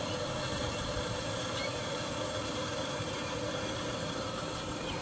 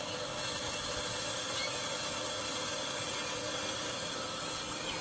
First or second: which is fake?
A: first